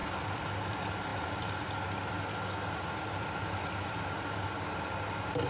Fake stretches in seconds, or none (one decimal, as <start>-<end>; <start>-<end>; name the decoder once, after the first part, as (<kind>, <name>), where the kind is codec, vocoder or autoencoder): none